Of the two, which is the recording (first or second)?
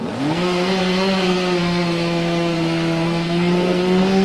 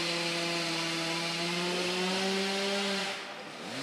second